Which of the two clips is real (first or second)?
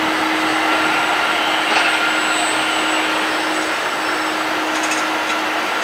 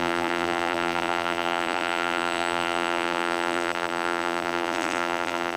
first